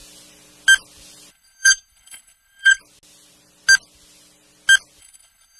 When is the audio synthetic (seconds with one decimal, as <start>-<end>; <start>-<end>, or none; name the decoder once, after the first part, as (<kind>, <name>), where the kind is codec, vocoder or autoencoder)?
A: 1.3-2.8 (codec, HILCodec); 5.0-5.6